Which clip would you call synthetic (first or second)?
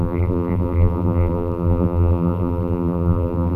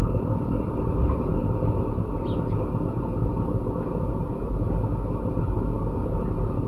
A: first